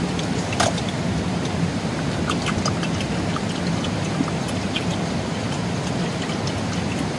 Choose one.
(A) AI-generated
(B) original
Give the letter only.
B